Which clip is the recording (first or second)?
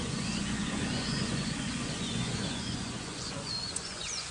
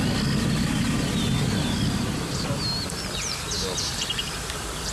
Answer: second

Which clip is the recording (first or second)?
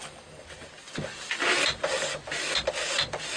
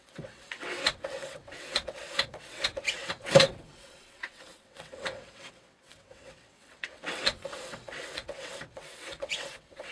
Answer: first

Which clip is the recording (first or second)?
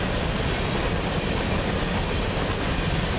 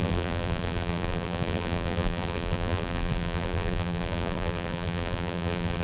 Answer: first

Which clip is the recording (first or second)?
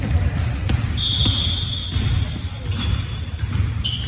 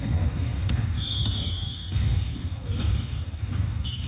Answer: first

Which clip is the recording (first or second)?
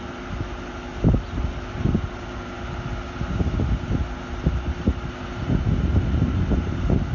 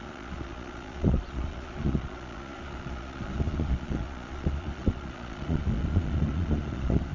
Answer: first